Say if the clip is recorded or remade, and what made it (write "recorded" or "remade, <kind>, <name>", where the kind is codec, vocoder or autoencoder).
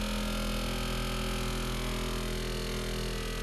recorded